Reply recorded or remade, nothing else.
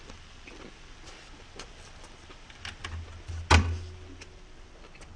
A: recorded